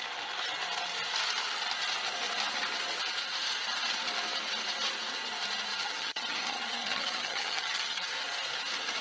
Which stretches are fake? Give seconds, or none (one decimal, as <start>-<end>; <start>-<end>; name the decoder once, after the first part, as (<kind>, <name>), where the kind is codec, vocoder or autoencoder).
5.7-8.1 (vocoder, HiFi-GAN)